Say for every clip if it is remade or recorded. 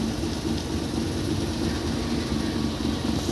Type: recorded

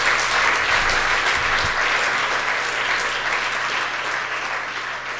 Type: recorded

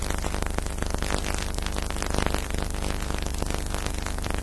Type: remade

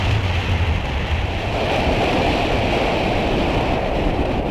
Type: recorded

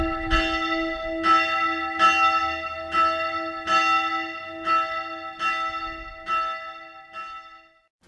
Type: recorded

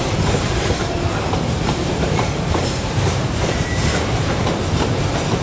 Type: remade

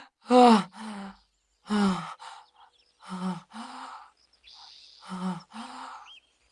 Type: recorded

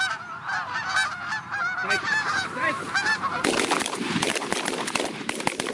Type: remade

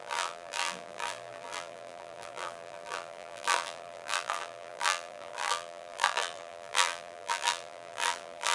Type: remade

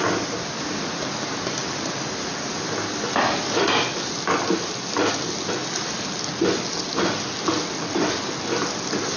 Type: recorded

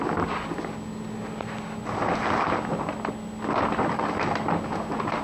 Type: recorded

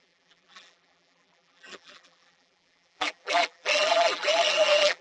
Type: remade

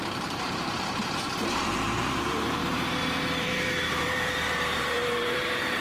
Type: remade